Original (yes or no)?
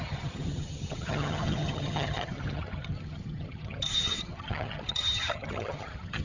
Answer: no